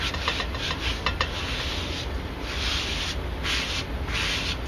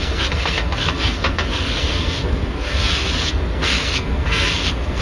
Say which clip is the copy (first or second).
second